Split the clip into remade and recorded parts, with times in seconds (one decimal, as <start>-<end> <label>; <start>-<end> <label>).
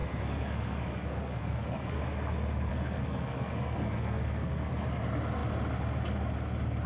0.0-2.0 remade; 2.0-2.7 recorded; 2.7-4.7 remade; 4.7-6.9 recorded